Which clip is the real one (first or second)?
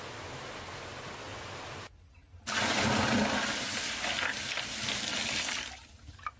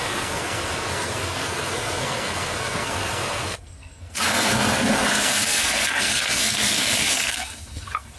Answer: first